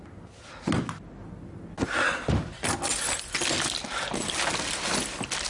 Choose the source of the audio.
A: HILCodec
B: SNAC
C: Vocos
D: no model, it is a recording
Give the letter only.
D